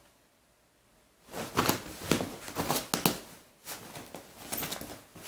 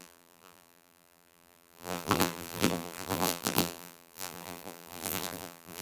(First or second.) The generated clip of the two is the second